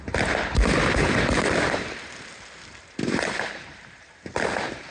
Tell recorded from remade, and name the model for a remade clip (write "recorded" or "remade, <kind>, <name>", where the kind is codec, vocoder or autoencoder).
recorded